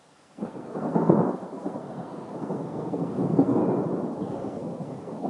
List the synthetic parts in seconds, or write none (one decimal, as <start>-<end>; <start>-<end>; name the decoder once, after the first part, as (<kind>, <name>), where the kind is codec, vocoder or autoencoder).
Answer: 0.0-3.6 (codec, SNAC); 4.2-5.3